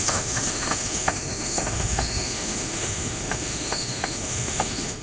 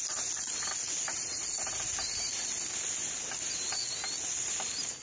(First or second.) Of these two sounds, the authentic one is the second